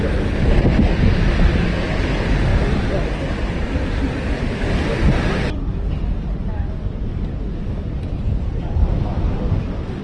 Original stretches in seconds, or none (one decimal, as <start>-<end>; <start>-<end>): 0.0-10.0